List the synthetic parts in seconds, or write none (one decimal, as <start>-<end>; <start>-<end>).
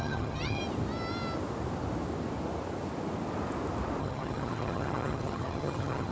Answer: 0.0-0.6; 4.0-6.1